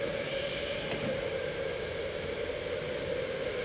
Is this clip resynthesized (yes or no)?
no